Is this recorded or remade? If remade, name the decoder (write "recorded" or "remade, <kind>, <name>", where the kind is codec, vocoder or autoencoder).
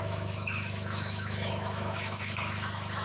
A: remade, autoencoder, DAC-VAE